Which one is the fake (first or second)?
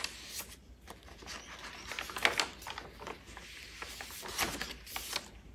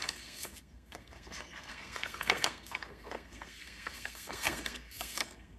second